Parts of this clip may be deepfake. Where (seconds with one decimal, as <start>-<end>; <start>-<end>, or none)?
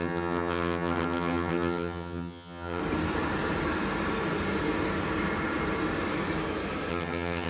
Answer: 0.0-2.8; 6.9-7.5